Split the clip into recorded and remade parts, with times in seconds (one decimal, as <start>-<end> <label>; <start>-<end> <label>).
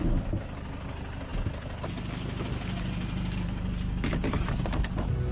0.0-5.3 recorded